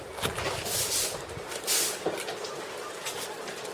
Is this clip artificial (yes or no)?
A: no